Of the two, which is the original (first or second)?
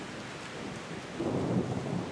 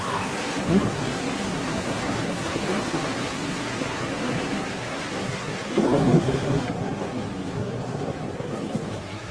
first